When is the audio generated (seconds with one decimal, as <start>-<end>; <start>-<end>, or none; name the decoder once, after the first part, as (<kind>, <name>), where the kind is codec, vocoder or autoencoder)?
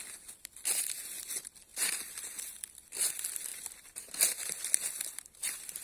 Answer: none